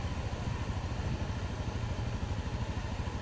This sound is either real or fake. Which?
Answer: real